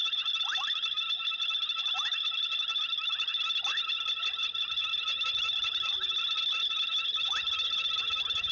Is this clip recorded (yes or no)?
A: yes